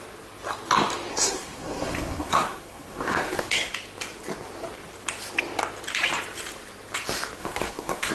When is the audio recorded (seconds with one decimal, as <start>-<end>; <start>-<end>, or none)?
0.0-1.1; 3.7-7.4